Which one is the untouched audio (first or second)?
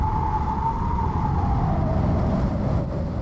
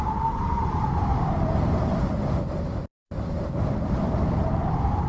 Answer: first